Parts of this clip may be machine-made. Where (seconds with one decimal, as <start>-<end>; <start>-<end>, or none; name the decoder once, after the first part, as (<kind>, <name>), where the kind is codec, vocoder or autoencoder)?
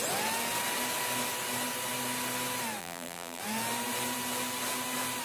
2.8-3.4 (vocoder, BigVGAN v2)